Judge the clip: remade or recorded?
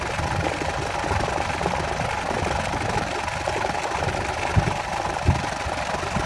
recorded